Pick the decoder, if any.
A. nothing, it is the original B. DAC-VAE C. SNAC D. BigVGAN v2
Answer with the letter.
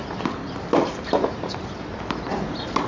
A